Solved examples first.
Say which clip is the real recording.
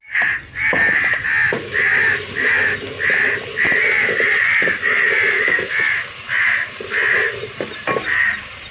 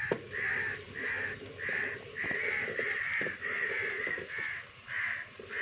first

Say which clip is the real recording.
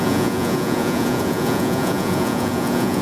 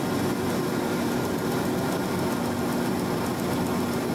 second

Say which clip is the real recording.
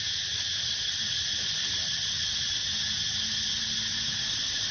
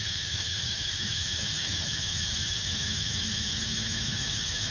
first